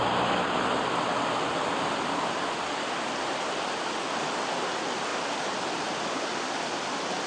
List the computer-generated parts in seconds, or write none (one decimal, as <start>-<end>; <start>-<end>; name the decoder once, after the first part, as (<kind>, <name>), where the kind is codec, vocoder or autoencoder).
none